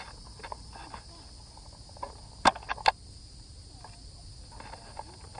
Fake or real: real